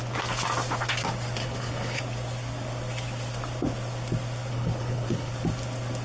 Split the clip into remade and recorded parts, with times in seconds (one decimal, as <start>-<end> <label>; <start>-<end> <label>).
0.0-1.4 recorded; 1.4-2.0 remade; 2.0-4.5 recorded; 4.5-5.3 remade; 5.3-6.0 recorded